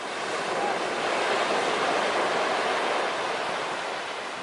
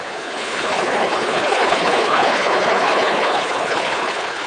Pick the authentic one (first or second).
first